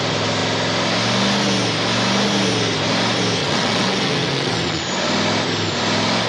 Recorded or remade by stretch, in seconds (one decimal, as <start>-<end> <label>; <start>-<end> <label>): 0.0-3.4 recorded; 3.4-4.8 remade; 4.8-6.3 recorded